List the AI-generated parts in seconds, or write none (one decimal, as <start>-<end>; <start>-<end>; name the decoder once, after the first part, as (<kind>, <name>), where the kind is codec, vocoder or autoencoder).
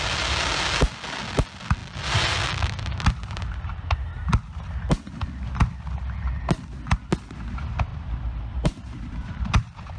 7.9-10.0 (vocoder, BigVGAN v2)